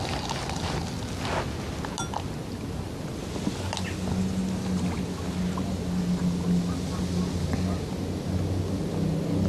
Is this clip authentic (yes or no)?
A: yes